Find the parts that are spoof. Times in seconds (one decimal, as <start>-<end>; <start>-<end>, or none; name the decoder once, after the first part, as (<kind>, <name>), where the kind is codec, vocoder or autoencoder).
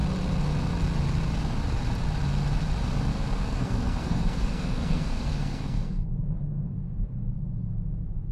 3.1-8.3 (codec, SNAC)